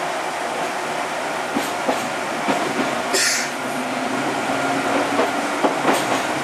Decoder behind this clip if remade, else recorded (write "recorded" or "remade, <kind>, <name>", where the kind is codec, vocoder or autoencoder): recorded